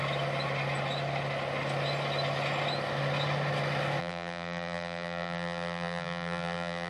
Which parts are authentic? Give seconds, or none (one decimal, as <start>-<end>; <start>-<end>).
0.0-4.0